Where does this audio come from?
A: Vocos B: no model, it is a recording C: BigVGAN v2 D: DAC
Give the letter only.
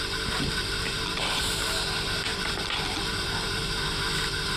B